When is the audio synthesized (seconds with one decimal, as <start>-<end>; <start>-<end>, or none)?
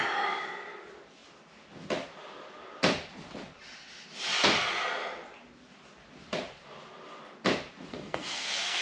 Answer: 7.9-8.8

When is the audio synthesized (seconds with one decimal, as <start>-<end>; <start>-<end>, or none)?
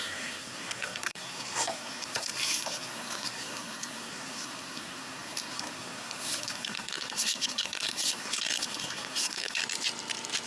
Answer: 0.0-9.6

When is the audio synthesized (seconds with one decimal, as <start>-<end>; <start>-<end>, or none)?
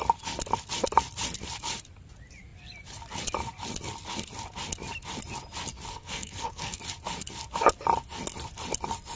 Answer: 5.9-6.8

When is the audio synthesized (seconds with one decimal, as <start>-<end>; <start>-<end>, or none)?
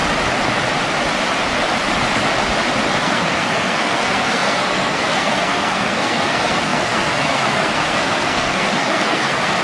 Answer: 3.0-9.6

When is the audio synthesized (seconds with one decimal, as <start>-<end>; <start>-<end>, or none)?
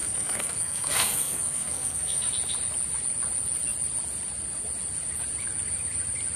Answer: 0.0-2.3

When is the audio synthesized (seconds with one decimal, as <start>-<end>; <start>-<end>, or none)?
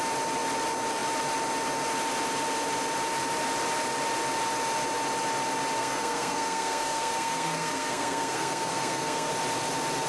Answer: 5.8-9.3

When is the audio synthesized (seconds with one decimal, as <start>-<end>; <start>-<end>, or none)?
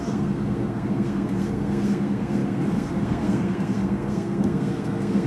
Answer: 0.0-5.3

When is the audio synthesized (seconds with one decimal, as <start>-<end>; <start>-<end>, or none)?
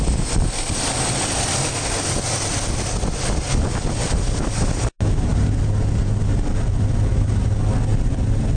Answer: none